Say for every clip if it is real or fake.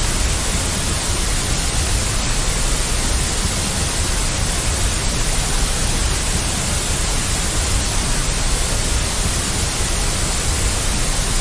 real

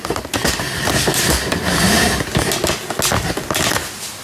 real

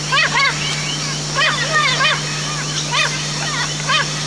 real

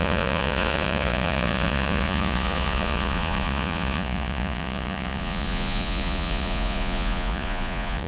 fake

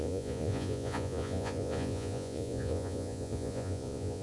fake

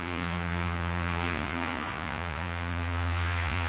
fake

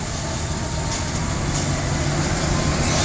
real